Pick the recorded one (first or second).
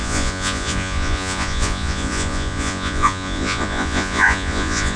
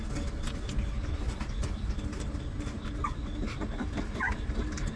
second